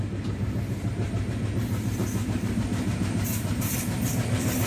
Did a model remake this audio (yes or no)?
yes